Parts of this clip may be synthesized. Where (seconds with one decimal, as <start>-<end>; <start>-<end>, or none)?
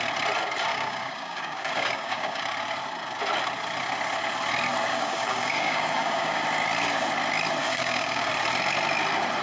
0.7-2.4; 4.9-6.4; 7.6-8.3